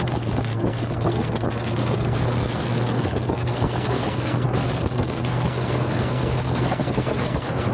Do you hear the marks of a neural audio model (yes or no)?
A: yes